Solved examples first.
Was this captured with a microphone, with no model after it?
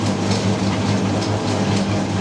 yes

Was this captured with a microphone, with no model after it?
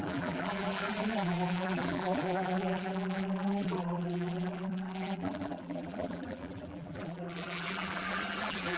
no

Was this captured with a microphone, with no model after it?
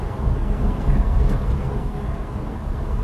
no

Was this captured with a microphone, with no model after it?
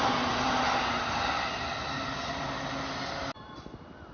yes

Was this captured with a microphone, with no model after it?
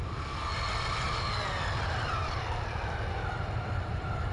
yes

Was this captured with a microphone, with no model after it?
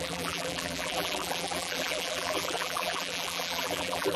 no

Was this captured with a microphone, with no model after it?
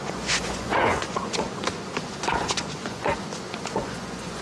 no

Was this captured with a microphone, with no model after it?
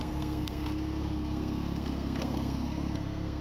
no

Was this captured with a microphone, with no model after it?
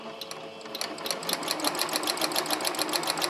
yes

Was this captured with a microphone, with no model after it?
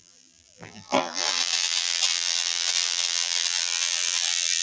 no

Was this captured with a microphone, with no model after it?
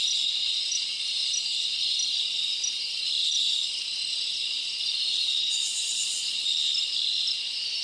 yes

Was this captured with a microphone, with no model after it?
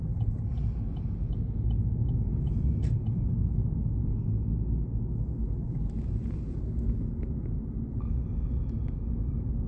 yes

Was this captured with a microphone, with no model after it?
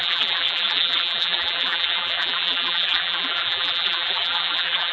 no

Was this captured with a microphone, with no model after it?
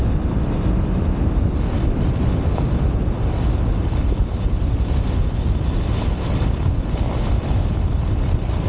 no